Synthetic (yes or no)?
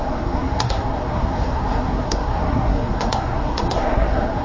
yes